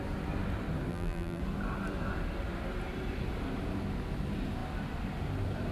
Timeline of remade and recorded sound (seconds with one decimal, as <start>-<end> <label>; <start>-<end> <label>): 0.0-0.9 recorded; 0.9-1.4 remade; 1.4-5.7 recorded